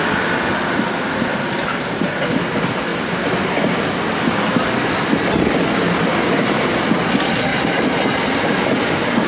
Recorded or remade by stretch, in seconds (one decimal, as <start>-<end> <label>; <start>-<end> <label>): 0.0-1.3 recorded; 1.3-2.3 remade; 2.3-2.9 recorded; 2.9-3.9 remade; 3.9-6.1 recorded; 6.1-6.8 remade; 6.8-7.5 recorded; 7.5-9.3 remade

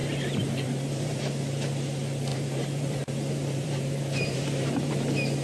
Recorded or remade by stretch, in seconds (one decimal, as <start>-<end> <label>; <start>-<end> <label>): 0.0-1.2 remade; 1.2-2.3 recorded; 2.3-4.9 remade; 4.9-5.4 recorded

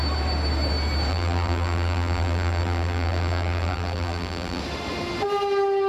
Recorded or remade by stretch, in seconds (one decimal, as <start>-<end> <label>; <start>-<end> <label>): 0.0-1.1 recorded; 1.1-4.6 remade; 4.6-5.9 recorded

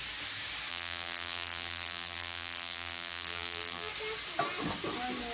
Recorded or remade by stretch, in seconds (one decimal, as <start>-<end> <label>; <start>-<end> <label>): 0.0-0.7 recorded; 0.7-3.9 remade; 3.9-5.3 recorded

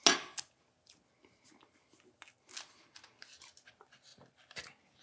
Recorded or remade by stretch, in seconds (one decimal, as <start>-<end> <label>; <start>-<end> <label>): 0.0-5.0 recorded

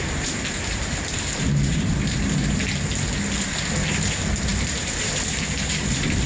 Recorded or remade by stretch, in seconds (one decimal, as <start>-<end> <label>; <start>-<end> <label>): 0.0-1.9 remade; 1.9-4.5 recorded; 4.5-6.3 remade